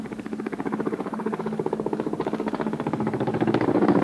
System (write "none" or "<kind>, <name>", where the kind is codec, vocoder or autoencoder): codec, DAC